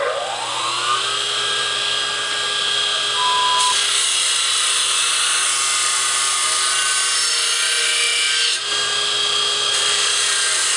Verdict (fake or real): real